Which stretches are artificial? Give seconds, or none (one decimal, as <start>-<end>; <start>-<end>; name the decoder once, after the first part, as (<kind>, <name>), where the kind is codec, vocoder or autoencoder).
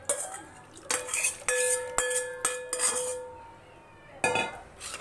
none